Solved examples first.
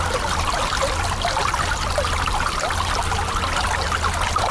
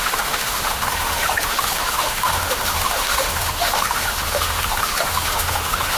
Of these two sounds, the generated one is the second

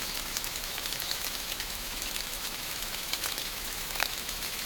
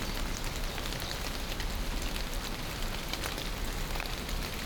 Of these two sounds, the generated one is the first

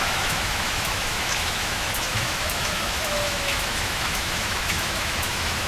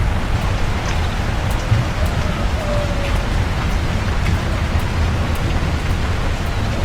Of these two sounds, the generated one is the first